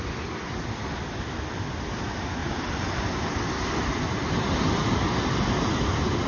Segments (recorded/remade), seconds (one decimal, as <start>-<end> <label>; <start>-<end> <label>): 0.0-6.3 recorded